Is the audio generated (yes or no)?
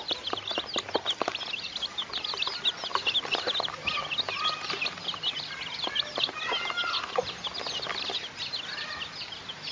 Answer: no